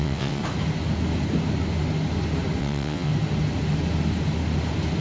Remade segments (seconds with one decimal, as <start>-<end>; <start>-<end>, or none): 0.0-0.4; 2.6-3.1